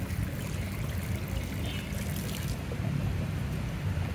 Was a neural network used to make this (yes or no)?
no